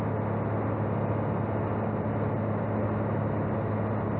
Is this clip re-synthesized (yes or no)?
no